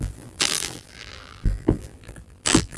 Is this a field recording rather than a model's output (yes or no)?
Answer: no